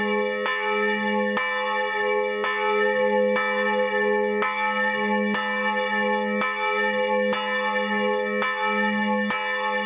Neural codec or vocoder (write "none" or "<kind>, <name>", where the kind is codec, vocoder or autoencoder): none